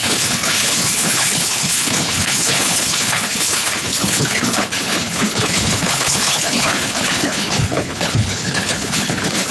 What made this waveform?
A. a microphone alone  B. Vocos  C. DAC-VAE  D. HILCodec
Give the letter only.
D